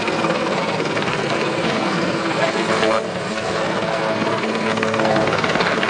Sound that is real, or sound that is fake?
fake